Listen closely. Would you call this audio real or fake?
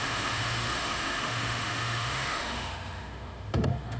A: fake